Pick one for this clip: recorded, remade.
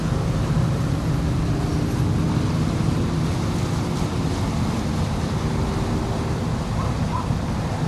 recorded